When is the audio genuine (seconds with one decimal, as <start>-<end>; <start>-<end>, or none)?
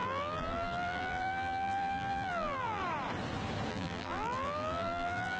2.8-3.7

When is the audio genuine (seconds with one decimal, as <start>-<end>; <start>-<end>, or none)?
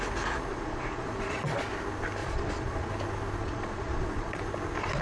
0.0-0.5; 1.7-2.2; 2.9-3.4; 4.4-5.0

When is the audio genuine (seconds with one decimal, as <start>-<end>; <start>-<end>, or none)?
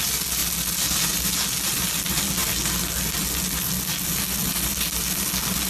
0.0-5.7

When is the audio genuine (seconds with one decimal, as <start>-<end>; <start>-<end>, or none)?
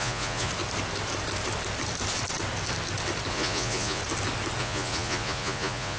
0.5-3.3; 4.0-4.6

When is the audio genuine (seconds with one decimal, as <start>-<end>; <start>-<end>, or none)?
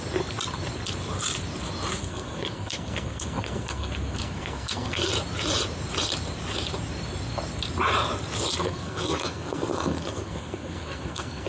0.0-2.0; 5.1-8.6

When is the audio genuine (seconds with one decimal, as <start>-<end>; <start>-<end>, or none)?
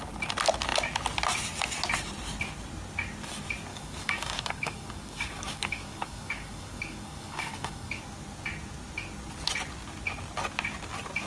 0.0-3.7; 8.0-11.3